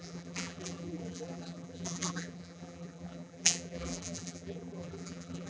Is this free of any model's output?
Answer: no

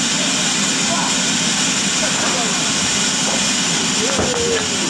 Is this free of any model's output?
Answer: yes